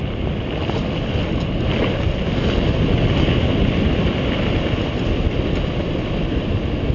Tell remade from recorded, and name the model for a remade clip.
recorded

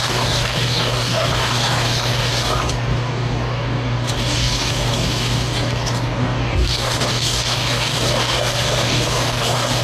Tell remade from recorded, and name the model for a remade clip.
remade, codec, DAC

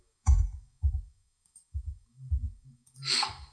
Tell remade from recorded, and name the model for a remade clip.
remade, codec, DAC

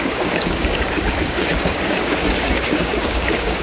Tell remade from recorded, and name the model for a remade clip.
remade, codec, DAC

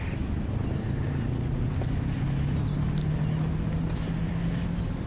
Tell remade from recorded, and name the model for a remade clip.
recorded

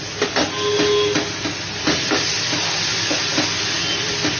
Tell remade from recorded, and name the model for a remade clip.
recorded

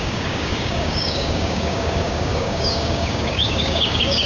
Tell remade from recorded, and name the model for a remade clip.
remade, codec, DAC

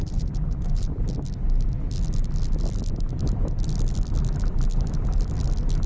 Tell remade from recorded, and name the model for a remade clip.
recorded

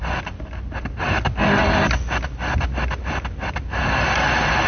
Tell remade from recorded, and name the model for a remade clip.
recorded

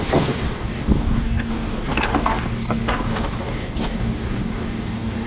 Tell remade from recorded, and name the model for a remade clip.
remade, codec, DAC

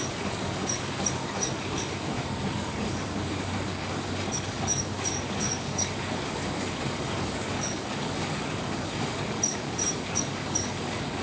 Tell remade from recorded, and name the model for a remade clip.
remade, codec, DAC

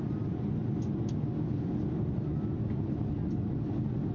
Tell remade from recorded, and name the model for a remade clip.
recorded